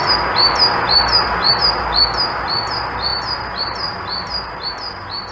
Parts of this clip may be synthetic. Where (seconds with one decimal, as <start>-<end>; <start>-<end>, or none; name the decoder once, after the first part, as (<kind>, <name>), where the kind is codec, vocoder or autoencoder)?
none